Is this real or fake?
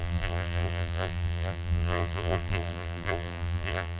fake